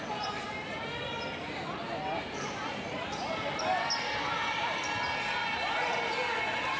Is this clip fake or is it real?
real